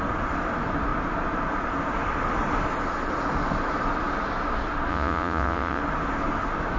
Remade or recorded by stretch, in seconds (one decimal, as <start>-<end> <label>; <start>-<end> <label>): 0.0-4.9 recorded; 4.9-5.8 remade; 5.8-6.8 recorded